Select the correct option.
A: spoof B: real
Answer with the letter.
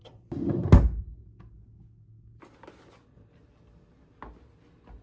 B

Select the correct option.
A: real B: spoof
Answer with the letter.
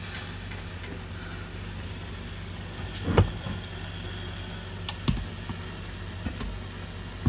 A